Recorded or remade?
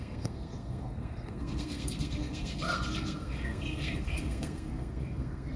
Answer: remade